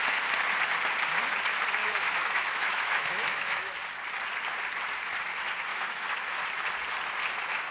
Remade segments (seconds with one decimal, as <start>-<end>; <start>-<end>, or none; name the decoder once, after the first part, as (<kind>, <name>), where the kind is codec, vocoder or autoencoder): 1.8-3.8 (autoencoder, DAC-VAE); 5.7-6.4